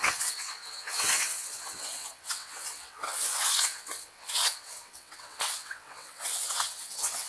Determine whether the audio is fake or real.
fake